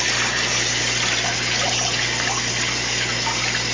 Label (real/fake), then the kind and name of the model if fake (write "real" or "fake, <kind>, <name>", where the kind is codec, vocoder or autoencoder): real